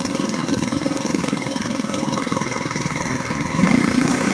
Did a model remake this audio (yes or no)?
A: yes